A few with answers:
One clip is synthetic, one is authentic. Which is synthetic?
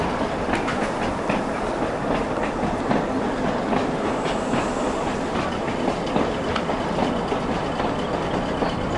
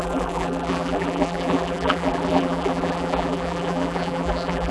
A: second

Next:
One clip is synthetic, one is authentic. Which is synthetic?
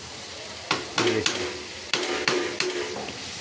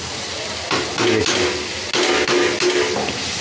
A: first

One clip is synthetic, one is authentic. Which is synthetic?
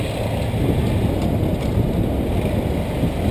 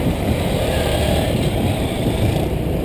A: second